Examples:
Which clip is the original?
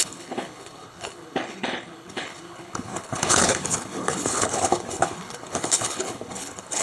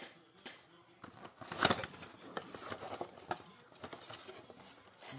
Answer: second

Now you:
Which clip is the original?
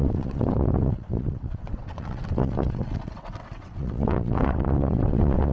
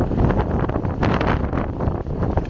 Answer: second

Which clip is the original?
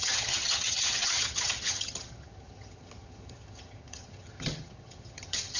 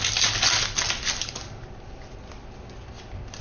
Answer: second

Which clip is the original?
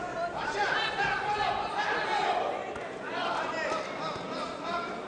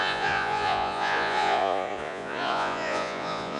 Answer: first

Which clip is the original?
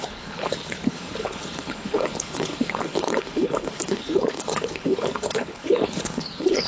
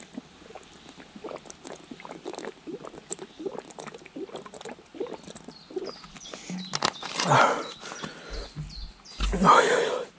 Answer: second